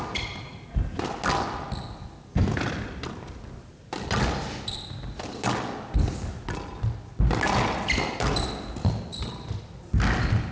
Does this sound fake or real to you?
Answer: real